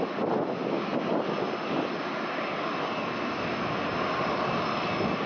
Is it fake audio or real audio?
real